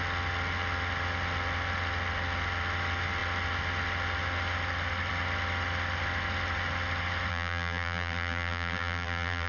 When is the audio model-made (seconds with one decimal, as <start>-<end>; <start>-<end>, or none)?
7.3-9.5